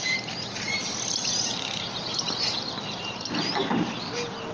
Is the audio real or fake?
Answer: fake